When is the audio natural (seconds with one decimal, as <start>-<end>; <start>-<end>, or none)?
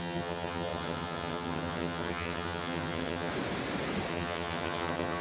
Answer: 3.3-4.1